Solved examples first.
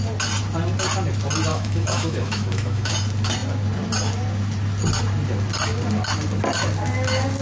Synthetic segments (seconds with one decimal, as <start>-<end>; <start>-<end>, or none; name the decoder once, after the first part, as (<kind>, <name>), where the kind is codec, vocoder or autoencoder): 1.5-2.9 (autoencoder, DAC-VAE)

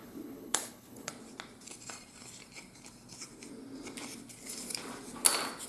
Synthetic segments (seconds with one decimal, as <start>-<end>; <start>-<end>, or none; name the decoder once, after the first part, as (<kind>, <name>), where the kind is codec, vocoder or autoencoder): 0.0-1.1 (codec, HILCodec)

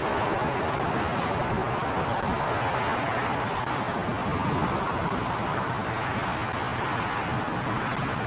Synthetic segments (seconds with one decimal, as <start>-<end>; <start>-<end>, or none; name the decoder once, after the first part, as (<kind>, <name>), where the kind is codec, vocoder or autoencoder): 4.9-5.7 (vocoder, BigVGAN v2)

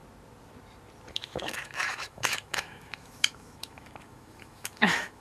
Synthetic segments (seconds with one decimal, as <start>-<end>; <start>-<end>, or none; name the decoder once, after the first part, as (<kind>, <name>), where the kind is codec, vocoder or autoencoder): 1.1-5.2 (autoencoder, DAC-VAE)

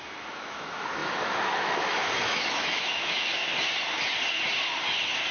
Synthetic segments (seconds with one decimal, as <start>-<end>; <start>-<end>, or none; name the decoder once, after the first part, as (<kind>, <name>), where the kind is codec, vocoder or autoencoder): 0.0-3.4 (autoencoder, DAC-VAE)